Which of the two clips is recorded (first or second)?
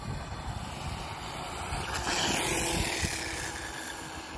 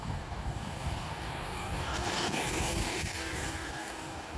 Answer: first